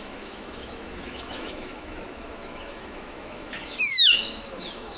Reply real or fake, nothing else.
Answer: fake